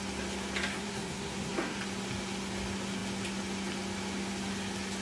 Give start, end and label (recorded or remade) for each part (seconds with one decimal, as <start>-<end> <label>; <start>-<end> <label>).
0.0-0.7 recorded; 0.7-1.8 remade; 1.8-5.0 recorded